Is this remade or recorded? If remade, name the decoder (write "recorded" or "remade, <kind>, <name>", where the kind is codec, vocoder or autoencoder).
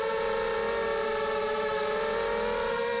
recorded